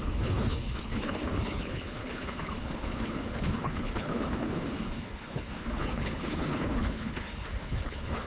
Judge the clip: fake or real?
fake